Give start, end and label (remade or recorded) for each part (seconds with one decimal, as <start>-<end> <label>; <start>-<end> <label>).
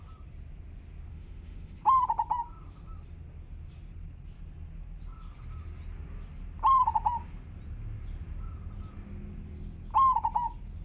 0.0-1.1 recorded; 1.1-1.9 remade; 1.9-10.8 recorded